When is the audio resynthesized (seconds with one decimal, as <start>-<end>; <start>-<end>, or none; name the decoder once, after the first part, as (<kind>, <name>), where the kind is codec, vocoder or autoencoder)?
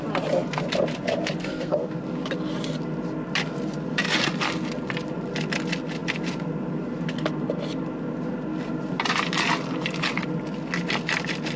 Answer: 1.4-1.9 (codec, SNAC)